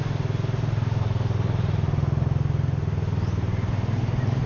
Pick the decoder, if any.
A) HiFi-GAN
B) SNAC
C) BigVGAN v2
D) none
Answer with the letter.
D